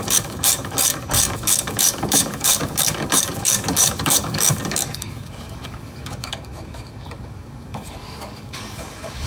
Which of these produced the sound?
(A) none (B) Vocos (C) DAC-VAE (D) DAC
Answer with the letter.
D